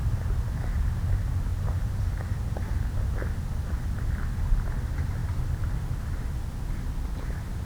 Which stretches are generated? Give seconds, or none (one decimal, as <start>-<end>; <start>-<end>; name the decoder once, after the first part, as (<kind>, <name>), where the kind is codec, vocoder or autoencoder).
0.0-1.1 (vocoder, BigVGAN v2)